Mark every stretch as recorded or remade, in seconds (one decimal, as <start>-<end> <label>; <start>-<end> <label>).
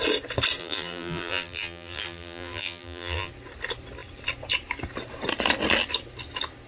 0.0-0.6 recorded; 0.6-3.3 remade; 3.3-6.7 recorded